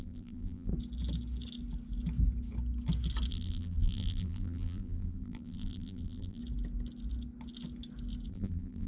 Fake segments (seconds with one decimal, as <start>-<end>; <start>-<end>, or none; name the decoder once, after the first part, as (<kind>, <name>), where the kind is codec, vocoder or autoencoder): 0.0-0.7 (vocoder, BigVGAN v2); 3.3-6.4; 8.3-8.9